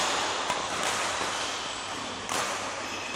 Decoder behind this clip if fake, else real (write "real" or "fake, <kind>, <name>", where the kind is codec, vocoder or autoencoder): fake, vocoder, BigVGAN v2